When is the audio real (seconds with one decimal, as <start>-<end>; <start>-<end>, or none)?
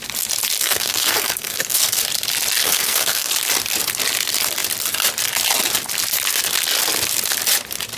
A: 0.0-0.6; 2.0-2.6; 3.3-8.0